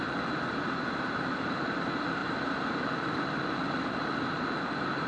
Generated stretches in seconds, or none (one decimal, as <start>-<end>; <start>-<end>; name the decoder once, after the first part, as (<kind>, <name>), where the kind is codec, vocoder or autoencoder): 0.0-5.1 (vocoder, BigVGAN v2)